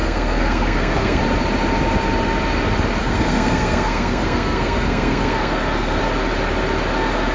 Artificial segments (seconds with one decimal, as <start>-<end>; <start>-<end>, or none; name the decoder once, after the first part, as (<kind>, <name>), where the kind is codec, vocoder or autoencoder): 0.0-1.2 (codec, SNAC); 3.0-6.0